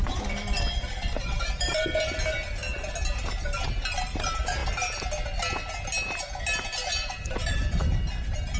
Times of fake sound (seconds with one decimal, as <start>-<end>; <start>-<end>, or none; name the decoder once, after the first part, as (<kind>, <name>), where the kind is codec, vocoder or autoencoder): 0.0-1.9 (vocoder, BigVGAN v2); 3.9-4.6; 6.9-8.6